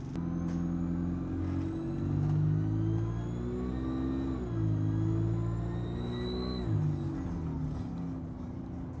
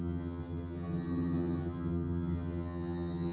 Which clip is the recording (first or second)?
first